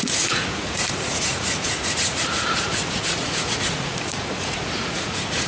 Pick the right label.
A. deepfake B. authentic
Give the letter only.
A